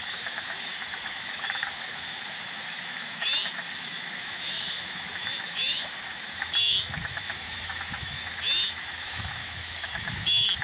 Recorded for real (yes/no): no